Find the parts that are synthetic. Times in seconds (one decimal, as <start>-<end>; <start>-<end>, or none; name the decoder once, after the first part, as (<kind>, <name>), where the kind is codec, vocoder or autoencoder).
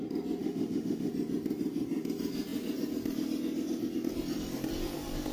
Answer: 0.4-1.1 (autoencoder, DAC-VAE)